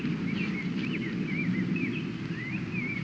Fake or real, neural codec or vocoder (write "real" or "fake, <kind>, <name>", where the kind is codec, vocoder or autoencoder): real